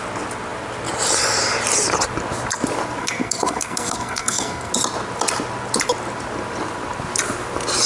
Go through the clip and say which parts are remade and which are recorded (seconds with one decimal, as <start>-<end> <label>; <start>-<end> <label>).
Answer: 0.0-3.0 recorded; 3.0-4.7 remade; 4.7-7.9 recorded